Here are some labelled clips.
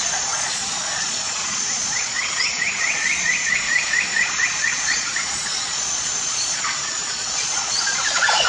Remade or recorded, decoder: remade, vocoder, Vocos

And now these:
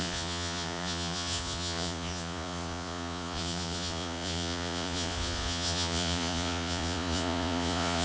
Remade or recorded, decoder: remade, vocoder, Vocos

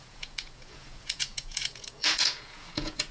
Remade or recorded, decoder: remade, vocoder, Vocos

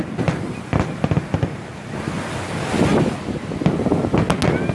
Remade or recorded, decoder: recorded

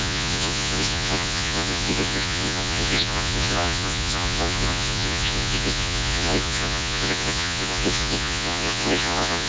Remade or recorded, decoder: remade, vocoder, Vocos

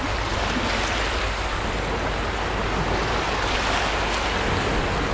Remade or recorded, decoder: recorded